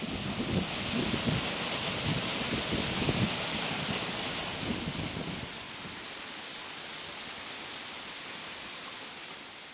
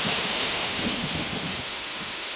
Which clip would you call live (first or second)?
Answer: first